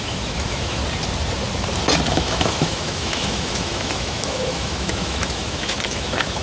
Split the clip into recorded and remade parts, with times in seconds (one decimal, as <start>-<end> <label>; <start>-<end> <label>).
0.0-0.8 remade; 0.8-2.1 recorded; 2.1-6.4 remade